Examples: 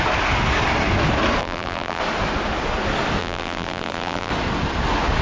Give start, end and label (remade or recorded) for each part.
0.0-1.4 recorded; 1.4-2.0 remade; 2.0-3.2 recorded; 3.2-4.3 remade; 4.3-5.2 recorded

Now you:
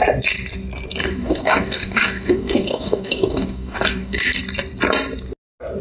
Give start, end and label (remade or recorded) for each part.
0.0-1.0 recorded; 1.0-4.4 remade; 4.4-5.8 recorded

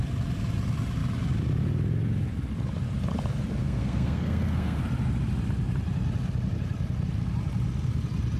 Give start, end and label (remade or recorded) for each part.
0.0-3.6 recorded; 3.6-4.8 remade; 4.8-8.4 recorded

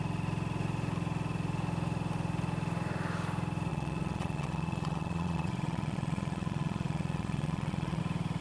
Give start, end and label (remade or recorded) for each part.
0.0-3.7 recorded; 3.7-8.0 remade; 8.0-8.4 recorded

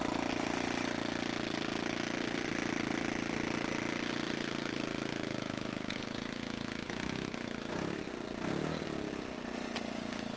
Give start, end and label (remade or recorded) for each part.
0.0-5.1 recorded; 5.1-8.0 remade; 8.0-10.4 recorded

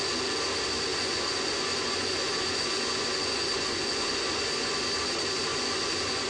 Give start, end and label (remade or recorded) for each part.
0.0-0.9 recorded; 0.9-4.7 remade; 4.7-5.5 recorded; 5.5-6.3 remade